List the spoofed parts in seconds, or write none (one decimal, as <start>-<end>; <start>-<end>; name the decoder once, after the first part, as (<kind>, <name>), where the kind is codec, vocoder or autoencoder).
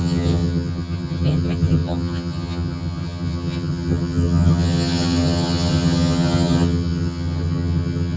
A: 0.0-8.2 (vocoder, HiFi-GAN)